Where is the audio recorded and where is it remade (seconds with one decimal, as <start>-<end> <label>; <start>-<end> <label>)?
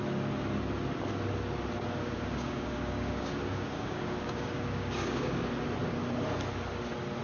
0.0-2.0 recorded; 2.0-5.3 remade; 5.3-7.2 recorded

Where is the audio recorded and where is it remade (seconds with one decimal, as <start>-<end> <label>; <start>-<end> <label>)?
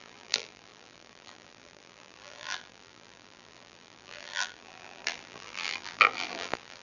0.0-6.8 remade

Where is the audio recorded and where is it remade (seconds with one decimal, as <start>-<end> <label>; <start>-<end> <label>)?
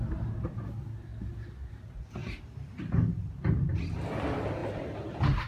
0.0-5.5 recorded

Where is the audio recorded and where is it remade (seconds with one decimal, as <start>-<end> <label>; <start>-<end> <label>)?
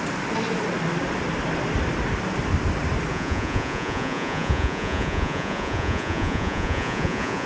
0.0-3.1 recorded; 3.1-7.5 remade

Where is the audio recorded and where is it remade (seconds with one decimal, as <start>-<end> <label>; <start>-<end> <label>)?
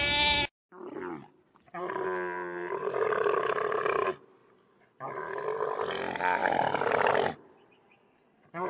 0.0-2.8 recorded; 2.8-3.3 remade; 3.3-4.4 recorded; 4.4-5.1 remade; 5.1-8.7 recorded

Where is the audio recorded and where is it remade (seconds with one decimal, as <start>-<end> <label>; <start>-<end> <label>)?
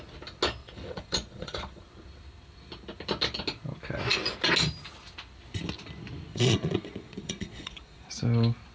0.0-0.6 recorded; 0.6-1.8 remade; 1.8-6.3 recorded; 6.3-8.1 remade; 8.1-8.7 recorded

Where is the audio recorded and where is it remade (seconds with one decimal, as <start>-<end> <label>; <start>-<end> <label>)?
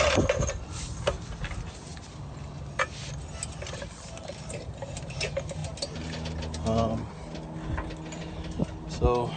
0.0-1.9 recorded; 1.9-2.5 remade; 2.5-9.4 recorded